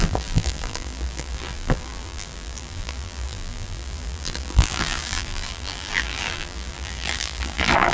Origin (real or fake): fake